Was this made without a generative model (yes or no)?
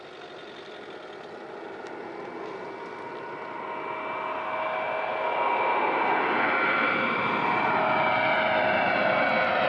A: yes